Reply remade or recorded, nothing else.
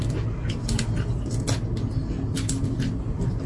recorded